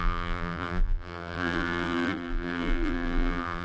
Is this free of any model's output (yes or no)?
no